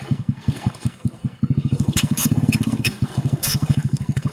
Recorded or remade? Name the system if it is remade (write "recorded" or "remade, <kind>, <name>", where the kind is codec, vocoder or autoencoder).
remade, codec, SNAC